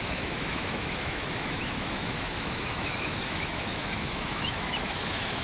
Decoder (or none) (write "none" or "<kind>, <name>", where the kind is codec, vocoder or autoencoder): autoencoder, DAC-VAE